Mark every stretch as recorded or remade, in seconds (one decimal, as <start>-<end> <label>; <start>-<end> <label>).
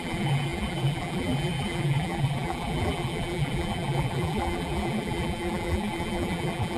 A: 0.0-6.8 remade